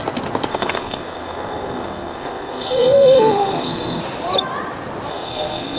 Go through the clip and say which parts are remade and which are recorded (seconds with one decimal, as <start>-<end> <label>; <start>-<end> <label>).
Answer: 0.0-0.5 recorded; 0.5-4.0 remade; 4.0-5.1 recorded; 5.1-5.8 remade